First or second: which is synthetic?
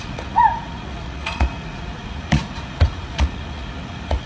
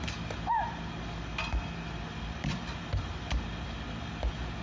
first